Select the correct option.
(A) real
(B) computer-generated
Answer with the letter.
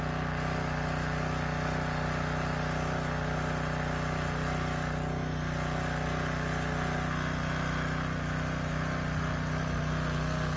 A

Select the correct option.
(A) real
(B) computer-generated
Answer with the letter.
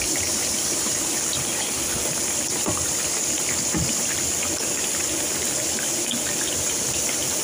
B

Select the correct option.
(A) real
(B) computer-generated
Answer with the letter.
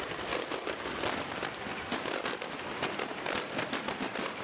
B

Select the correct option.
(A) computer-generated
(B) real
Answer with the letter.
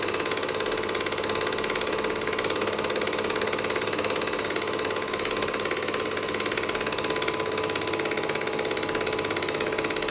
B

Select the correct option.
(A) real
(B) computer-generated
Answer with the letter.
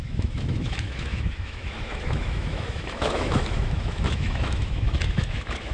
B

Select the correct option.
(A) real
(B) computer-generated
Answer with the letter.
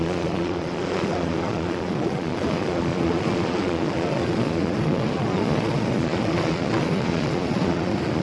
B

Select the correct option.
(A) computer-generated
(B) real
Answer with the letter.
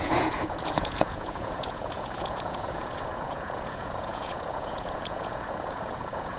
A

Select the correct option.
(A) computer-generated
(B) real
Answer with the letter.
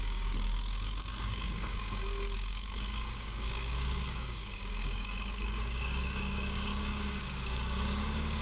A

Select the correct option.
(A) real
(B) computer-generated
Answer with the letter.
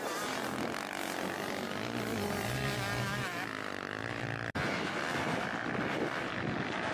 A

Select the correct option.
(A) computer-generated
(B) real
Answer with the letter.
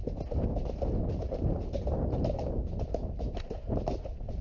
B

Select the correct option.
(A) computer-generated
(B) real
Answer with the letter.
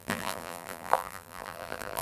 A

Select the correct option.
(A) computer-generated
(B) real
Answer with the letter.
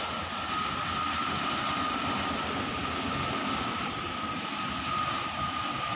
B